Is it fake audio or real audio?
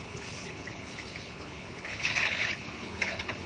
fake